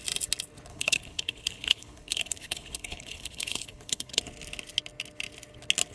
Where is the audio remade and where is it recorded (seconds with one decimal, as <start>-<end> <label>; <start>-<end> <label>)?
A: 0.0-0.7 recorded; 0.7-4.2 remade; 4.2-5.9 recorded

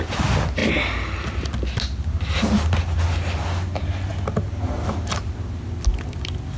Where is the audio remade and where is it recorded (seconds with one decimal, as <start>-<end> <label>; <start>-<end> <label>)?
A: 0.0-6.6 recorded